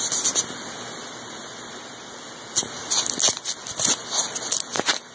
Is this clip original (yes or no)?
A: yes